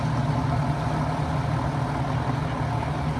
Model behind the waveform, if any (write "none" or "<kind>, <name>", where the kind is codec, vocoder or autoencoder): none